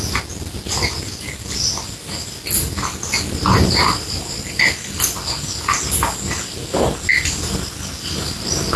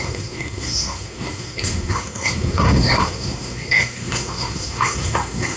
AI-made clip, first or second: second